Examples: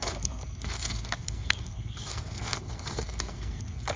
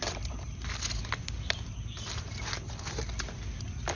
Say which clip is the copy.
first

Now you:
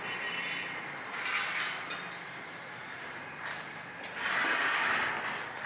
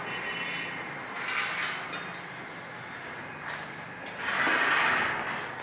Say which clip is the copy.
first